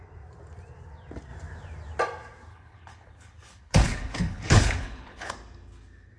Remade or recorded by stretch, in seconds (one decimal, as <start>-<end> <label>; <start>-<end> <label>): 0.0-2.5 recorded; 2.5-5.3 remade; 5.3-6.2 recorded